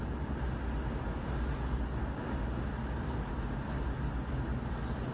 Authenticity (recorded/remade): recorded